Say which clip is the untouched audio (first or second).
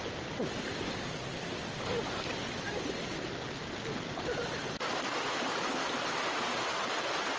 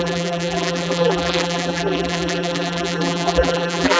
first